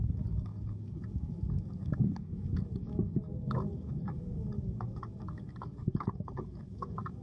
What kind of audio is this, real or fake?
fake